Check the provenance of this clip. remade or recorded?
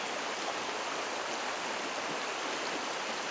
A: recorded